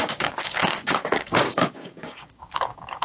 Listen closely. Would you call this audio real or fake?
fake